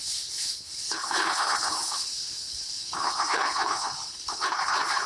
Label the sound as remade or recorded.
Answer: remade